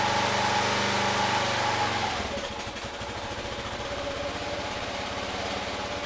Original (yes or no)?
yes